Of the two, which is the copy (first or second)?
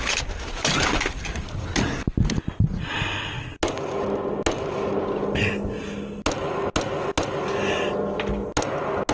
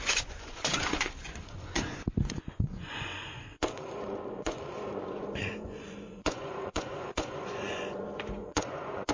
second